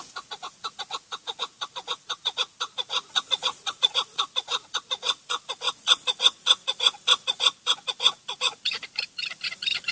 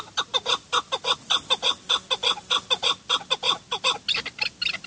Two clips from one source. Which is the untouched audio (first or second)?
second